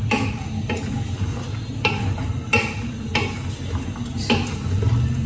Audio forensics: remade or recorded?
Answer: recorded